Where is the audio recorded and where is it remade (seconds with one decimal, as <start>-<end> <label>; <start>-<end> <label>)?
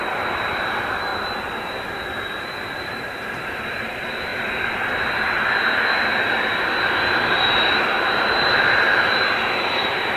0.0-4.3 remade; 4.3-6.4 recorded; 6.4-10.2 remade